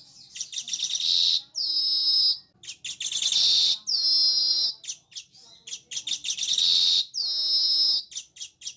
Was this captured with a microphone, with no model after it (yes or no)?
yes